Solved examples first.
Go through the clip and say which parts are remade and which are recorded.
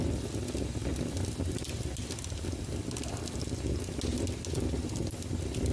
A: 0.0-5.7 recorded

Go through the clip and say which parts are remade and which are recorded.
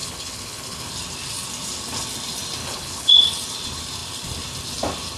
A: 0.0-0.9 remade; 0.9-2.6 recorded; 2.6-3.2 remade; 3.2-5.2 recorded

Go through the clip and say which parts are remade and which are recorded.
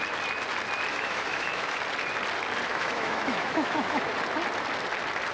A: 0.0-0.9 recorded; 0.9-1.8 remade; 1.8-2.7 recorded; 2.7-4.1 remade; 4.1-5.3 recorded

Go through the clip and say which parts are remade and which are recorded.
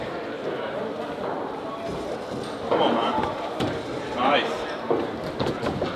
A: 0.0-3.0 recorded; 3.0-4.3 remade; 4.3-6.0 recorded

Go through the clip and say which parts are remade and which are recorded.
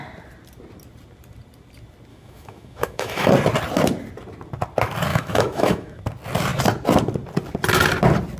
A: 0.0-2.1 recorded; 2.1-3.3 remade; 3.3-5.1 recorded; 5.1-6.0 remade; 6.0-8.4 recorded